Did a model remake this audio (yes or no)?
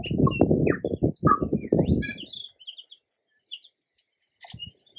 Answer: no